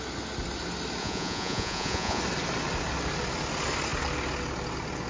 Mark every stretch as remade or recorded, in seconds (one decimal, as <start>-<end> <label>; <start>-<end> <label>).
0.0-1.0 recorded; 1.0-2.2 remade; 2.2-5.1 recorded